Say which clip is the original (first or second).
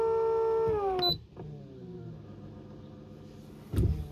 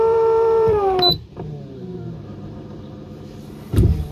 first